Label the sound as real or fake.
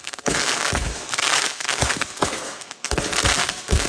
fake